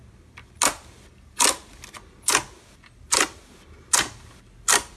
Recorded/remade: recorded